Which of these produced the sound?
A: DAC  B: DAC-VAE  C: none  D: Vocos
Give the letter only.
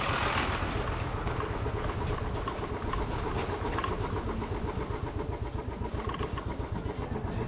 C